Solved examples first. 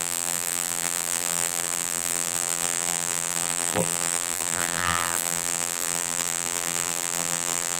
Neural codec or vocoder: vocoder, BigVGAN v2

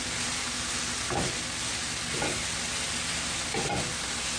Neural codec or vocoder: none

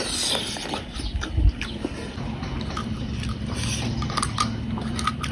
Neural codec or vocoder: none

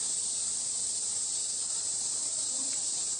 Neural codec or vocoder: vocoder, BigVGAN v2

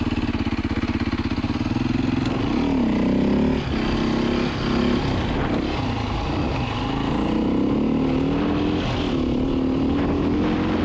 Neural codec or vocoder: none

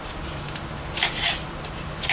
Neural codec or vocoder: vocoder, BigVGAN v2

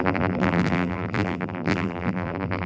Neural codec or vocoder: vocoder, BigVGAN v2